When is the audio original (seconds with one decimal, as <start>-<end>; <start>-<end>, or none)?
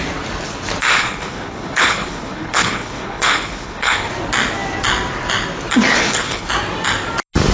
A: 0.0-0.9; 4.1-5.9; 6.5-7.5